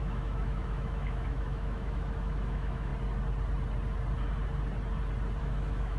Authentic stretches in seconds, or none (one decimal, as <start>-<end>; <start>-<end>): 2.9-5.4